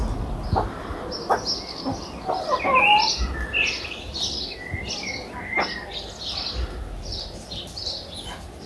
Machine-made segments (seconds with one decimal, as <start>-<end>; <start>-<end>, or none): none